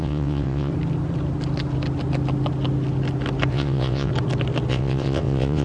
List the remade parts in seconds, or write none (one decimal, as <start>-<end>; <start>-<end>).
0.0-0.7; 3.5-4.1; 4.7-5.6